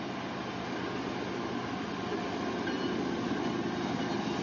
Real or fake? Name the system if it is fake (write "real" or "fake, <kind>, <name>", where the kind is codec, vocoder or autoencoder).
real